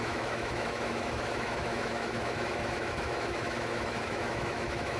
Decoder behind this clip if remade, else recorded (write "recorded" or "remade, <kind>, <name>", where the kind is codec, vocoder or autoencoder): remade, autoencoder, DAC-VAE